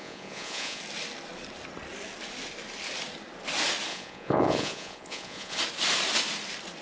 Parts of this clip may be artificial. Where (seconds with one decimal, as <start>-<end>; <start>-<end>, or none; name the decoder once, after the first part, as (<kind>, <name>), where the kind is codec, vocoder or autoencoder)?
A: 0.0-0.8 (vocoder, Vocos); 3.9-5.6